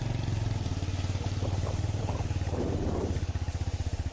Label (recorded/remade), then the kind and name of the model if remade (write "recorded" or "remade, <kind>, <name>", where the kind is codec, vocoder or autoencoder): remade, vocoder, BigVGAN v2